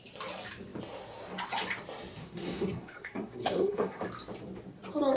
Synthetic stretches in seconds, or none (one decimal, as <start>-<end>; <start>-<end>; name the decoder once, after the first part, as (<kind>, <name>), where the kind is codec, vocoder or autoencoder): 2.2-4.0 (codec, SNAC)